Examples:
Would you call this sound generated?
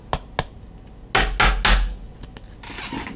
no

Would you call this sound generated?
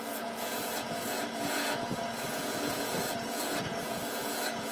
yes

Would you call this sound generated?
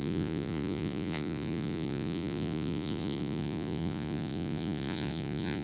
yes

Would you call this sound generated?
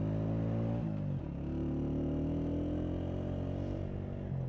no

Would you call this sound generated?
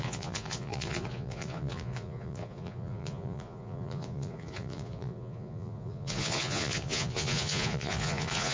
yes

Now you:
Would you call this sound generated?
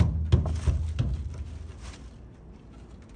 no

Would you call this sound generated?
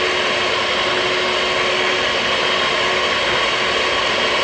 no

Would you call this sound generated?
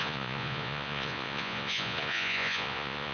yes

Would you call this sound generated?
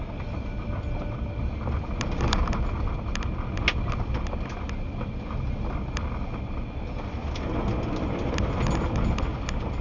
no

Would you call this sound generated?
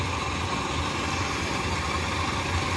no